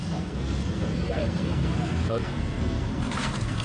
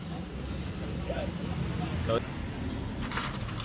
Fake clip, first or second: first